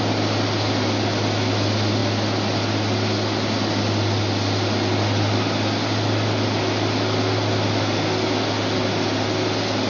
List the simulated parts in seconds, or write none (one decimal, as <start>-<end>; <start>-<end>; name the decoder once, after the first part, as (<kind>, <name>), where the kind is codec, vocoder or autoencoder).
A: none